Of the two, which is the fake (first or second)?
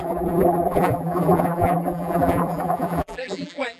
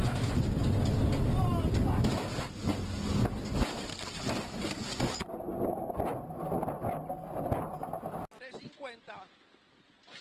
first